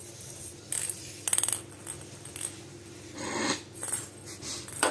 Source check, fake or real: real